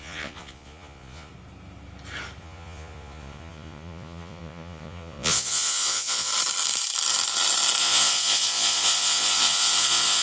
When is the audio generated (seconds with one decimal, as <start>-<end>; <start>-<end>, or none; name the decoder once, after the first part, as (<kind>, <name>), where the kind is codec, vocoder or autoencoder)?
0.0-1.3 (vocoder, Vocos); 2.4-6.3; 7.8-10.2